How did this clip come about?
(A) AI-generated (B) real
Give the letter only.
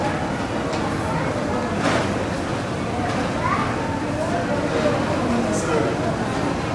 B